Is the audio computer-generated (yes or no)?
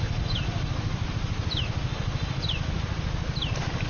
no